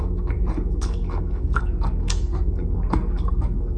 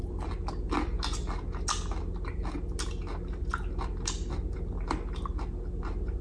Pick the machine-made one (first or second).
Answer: first